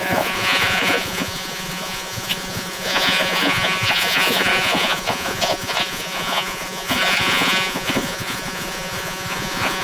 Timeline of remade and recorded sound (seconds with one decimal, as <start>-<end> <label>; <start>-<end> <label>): 0.0-9.8 remade